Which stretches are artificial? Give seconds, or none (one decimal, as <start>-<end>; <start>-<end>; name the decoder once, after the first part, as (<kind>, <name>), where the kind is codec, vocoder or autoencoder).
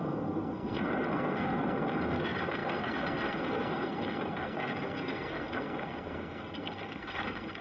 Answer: 0.0-7.6 (codec, SNAC)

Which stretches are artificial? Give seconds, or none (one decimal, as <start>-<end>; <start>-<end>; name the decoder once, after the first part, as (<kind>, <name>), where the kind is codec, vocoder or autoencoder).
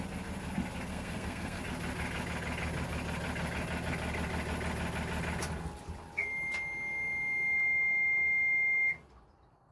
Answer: 0.9-1.6 (codec, SNAC)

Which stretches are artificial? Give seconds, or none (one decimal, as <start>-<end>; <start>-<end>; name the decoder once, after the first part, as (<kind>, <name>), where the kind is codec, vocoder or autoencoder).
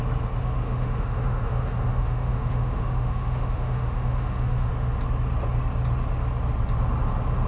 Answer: 0.4-4.7 (autoencoder, DAC-VAE)